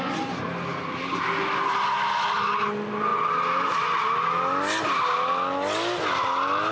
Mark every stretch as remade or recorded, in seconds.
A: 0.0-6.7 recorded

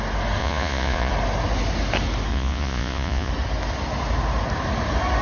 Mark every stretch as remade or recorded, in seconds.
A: 0.0-0.4 recorded; 0.4-1.1 remade; 1.1-2.3 recorded; 2.3-3.3 remade; 3.3-5.2 recorded

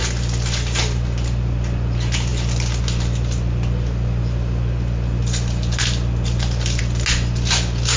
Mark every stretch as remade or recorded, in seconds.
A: 0.0-8.0 recorded

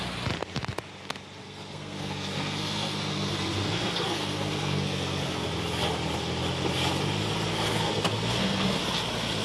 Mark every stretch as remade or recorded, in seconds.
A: 0.0-1.4 recorded; 1.4-5.5 remade; 5.5-7.5 recorded; 7.5-8.8 remade; 8.8-9.4 recorded

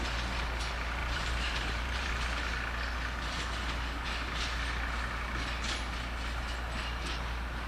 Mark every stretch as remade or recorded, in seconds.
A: 0.0-1.0 recorded; 1.0-2.1 remade; 2.1-7.7 recorded